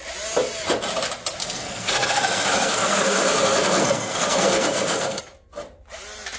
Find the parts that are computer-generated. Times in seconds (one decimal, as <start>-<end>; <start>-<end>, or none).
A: 1.4-5.2